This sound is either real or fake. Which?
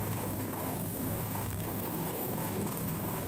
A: fake